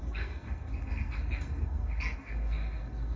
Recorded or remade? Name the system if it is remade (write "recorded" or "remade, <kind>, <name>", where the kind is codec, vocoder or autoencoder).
remade, codec, SNAC